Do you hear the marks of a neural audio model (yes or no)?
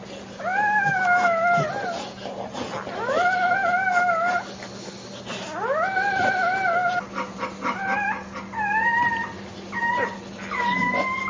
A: no